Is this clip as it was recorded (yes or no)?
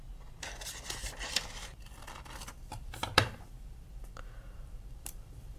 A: no